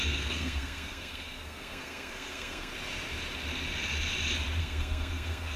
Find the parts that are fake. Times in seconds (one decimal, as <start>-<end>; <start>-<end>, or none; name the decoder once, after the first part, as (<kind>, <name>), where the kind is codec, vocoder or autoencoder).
0.0-2.7 (codec, SNAC); 4.6-5.6